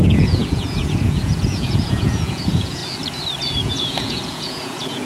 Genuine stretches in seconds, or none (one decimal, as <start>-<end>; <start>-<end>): 2.8-3.4